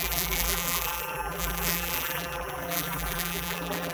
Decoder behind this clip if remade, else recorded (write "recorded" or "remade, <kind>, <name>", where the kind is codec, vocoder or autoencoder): remade, vocoder, BigVGAN v2